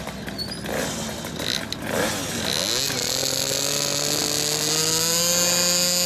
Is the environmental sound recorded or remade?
recorded